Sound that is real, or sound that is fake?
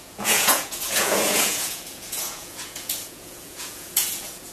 fake